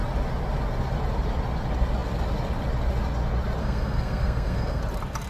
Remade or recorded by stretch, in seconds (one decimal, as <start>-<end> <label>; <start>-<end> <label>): 0.0-3.6 recorded; 3.6-4.8 remade; 4.8-5.3 recorded